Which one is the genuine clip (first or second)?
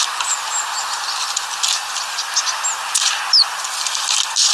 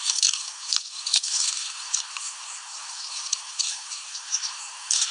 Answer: first